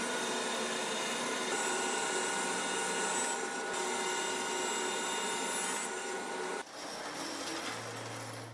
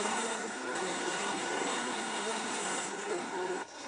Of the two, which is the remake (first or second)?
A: second